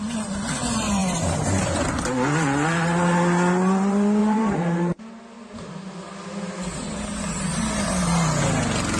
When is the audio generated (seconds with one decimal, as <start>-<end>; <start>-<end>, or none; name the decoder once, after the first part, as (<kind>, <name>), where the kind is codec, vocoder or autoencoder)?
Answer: 4.2-5.1 (vocoder, BigVGAN v2)